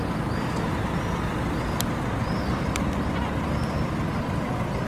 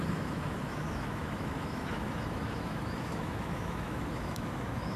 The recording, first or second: first